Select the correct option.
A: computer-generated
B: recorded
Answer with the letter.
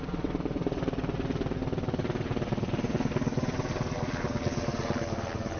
B